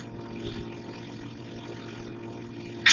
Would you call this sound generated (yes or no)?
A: no